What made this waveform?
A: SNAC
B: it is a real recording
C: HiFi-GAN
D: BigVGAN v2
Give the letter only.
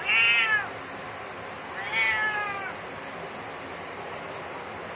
B